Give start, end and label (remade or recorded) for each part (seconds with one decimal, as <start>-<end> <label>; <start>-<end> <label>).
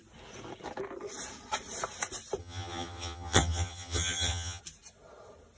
0.0-2.4 recorded; 2.4-4.6 remade; 4.6-5.6 recorded